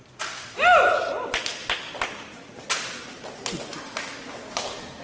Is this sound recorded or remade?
recorded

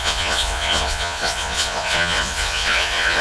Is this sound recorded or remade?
remade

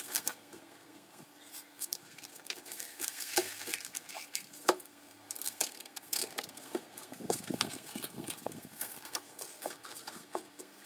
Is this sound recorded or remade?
remade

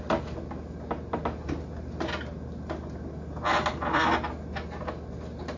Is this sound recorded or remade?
recorded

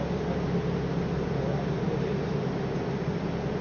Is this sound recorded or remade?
recorded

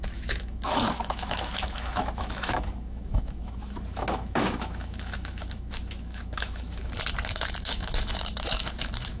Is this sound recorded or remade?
remade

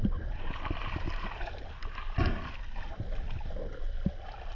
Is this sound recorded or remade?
recorded